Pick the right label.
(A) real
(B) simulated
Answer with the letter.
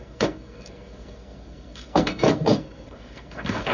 B